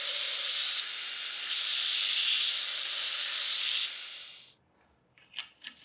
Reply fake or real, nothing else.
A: real